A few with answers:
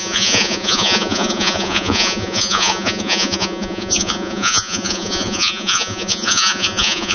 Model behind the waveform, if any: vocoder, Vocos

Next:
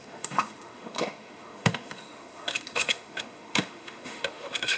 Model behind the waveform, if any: autoencoder, DAC-VAE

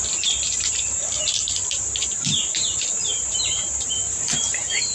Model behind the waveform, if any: vocoder, BigVGAN v2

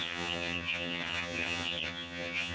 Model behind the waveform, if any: vocoder, HiFi-GAN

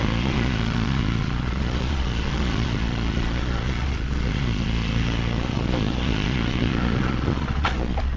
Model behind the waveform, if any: vocoder, Vocos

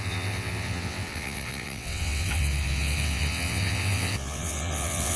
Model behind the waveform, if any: vocoder, WaveNeXt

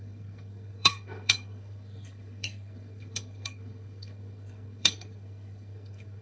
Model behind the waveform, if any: codec, SNAC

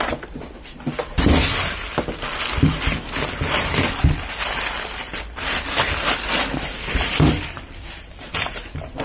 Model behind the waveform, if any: vocoder, BigVGAN v2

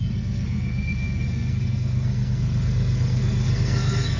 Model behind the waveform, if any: codec, SNAC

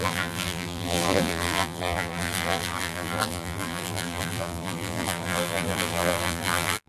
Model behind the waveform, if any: vocoder, BigVGAN v2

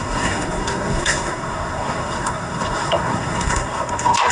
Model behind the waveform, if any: codec, SNAC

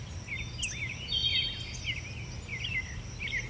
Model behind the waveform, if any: none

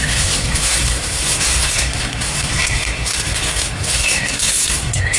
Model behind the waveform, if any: codec, SNAC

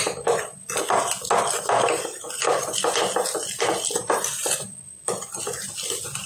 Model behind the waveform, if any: none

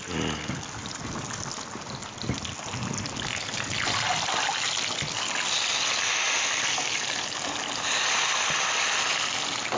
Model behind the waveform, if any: none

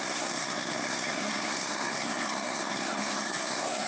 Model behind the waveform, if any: codec, SNAC